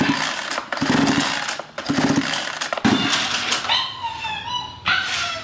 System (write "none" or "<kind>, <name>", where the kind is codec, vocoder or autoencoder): none